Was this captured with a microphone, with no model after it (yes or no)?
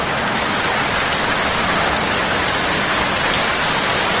yes